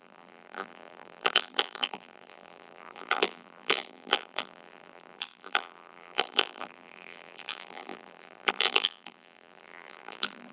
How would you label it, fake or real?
fake